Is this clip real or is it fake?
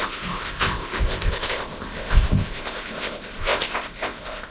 fake